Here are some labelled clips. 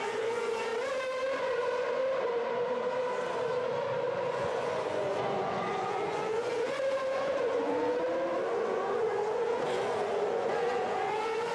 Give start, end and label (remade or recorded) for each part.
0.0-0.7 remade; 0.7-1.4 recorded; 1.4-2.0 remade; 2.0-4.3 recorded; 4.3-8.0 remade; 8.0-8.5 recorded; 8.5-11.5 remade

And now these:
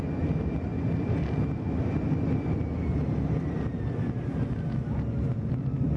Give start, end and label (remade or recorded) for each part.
0.0-6.0 recorded

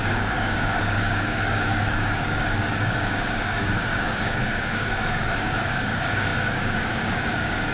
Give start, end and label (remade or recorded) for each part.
0.0-7.7 remade

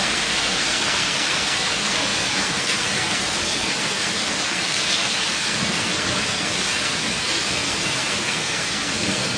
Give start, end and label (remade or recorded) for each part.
0.0-9.4 remade